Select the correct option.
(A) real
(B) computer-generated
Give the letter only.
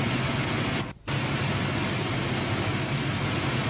A